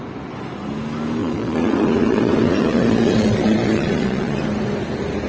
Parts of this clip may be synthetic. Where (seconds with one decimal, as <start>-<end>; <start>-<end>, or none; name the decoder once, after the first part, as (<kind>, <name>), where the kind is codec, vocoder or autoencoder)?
1.2-4.4 (vocoder, Vocos)